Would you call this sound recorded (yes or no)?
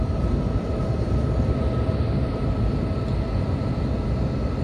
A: yes